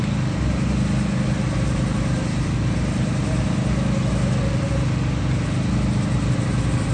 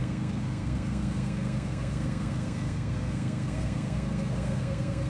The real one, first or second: first